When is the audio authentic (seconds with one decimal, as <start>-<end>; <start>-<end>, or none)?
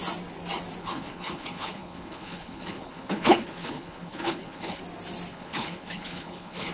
0.0-0.8; 4.8-5.3